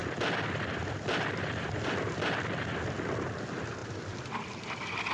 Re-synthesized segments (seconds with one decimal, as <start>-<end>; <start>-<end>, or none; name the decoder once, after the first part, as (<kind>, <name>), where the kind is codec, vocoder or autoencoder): 0.0-2.2 (vocoder, BigVGAN v2); 3.8-5.1